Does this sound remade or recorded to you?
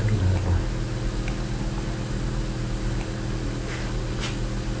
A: recorded